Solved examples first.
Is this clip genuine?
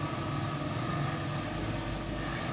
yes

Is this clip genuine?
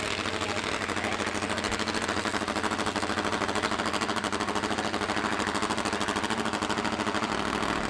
yes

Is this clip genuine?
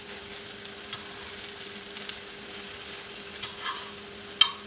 yes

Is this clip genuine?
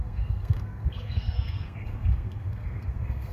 no